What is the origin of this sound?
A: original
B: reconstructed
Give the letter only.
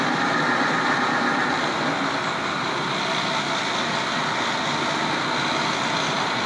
A